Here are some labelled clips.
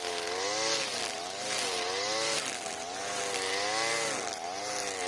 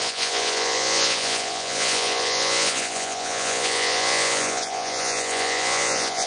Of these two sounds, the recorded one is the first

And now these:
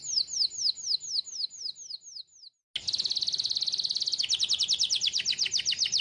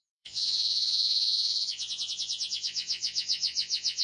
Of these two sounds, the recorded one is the first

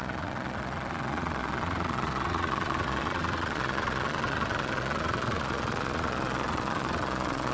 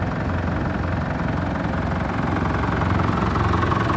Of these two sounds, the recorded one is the second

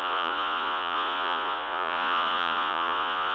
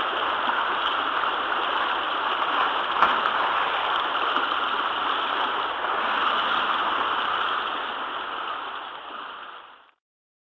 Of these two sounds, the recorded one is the second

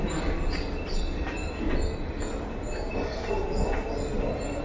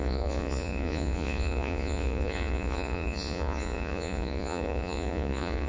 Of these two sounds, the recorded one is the first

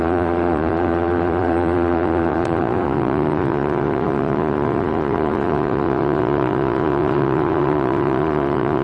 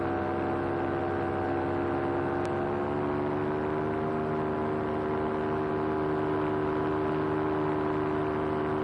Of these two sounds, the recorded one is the second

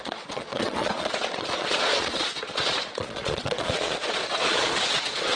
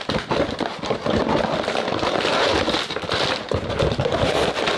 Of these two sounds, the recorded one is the second